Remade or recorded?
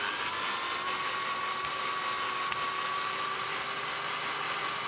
recorded